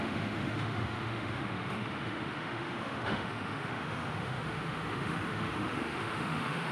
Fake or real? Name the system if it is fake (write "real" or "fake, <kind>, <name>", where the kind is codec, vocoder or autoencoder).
fake, autoencoder, DAC-VAE